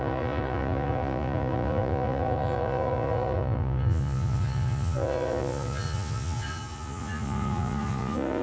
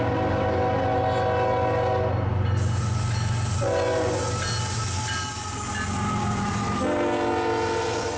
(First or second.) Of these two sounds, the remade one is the first